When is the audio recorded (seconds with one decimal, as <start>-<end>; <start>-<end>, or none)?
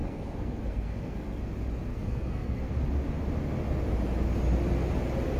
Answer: 1.4-1.9; 2.7-5.4